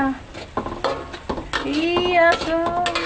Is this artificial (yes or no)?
no